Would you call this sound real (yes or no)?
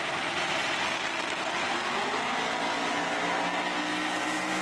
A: yes